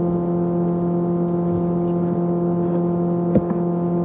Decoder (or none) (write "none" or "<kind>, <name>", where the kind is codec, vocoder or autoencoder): none